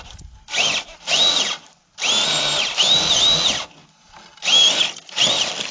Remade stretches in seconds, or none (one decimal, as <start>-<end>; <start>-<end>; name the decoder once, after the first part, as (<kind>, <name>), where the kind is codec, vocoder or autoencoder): none